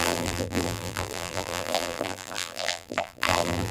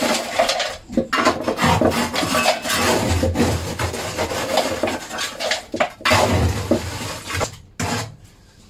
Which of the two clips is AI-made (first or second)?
first